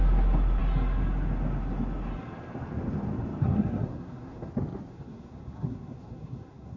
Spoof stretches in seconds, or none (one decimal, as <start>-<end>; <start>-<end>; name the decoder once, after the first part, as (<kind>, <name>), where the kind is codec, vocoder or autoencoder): 3.4-4.5 (codec, SNAC); 4.9-6.8